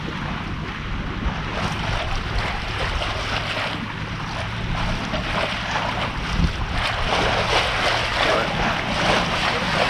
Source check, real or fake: real